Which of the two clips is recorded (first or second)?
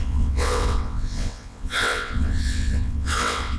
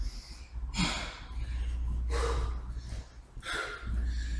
second